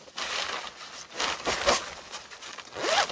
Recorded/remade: recorded